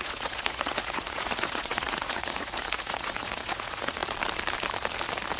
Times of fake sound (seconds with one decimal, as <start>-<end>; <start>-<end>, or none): 0.0-4.0